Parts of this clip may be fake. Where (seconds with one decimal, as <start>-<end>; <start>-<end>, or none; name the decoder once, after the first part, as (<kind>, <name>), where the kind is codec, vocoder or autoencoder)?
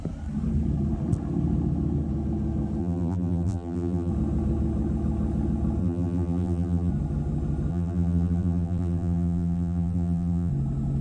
2.8-4.1 (vocoder, BigVGAN v2); 5.8-6.9; 7.7-10.5